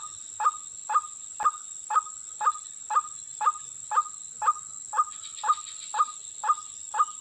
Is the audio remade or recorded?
recorded